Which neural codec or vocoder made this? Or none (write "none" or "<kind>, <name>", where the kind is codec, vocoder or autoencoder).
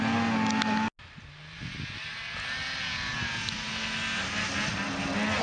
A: none